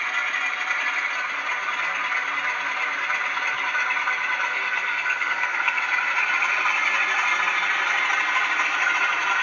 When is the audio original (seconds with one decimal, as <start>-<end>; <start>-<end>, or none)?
0.0-4.5; 5.8-9.4